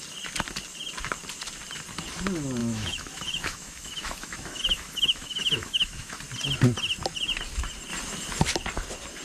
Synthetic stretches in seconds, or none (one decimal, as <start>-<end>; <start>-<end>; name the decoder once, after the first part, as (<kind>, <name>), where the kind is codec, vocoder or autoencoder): 2.6-6.2 (autoencoder, DAC-VAE)